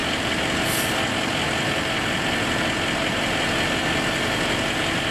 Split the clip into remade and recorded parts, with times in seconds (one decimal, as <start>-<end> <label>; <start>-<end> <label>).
0.0-5.1 recorded